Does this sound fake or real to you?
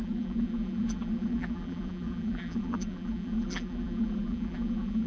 fake